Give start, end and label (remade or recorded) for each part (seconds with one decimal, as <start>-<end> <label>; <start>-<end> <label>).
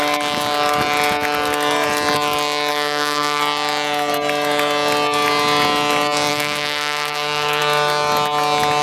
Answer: 0.0-2.7 recorded; 2.7-3.4 remade; 3.4-6.3 recorded; 6.3-7.6 remade; 7.6-8.8 recorded